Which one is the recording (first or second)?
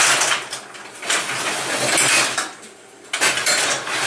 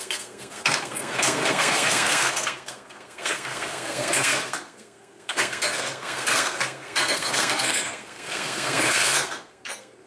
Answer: first